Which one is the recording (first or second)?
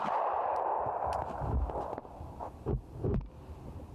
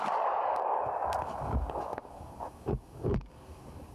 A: first